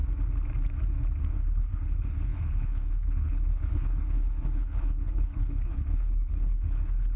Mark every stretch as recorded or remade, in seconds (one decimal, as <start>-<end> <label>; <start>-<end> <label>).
0.0-1.3 recorded; 1.3-7.2 remade